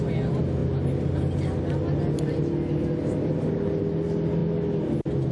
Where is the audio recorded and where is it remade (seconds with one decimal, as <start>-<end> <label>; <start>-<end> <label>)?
0.0-5.3 recorded